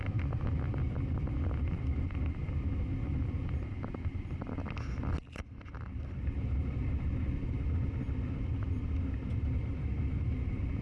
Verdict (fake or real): real